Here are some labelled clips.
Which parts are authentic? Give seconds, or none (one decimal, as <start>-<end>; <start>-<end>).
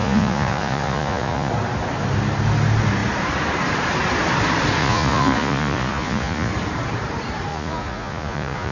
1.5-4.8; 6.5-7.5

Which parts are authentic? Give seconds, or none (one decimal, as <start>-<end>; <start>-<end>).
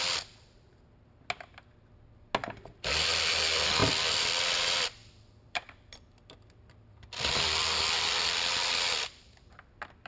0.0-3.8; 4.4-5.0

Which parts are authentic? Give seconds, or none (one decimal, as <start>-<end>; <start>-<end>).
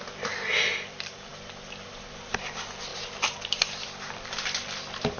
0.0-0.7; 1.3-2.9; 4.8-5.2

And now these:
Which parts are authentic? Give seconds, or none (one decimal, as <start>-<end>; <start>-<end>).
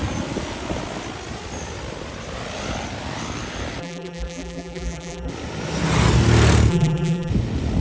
0.0-3.8; 5.3-6.7; 7.3-7.8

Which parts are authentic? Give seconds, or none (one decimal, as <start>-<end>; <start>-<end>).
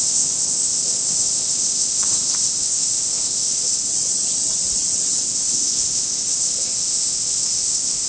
3.9-5.2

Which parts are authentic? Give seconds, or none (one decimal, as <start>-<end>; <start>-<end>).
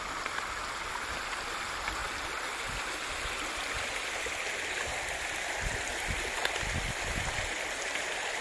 0.0-8.4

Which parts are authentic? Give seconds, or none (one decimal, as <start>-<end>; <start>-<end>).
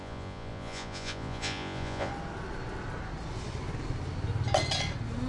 2.1-5.3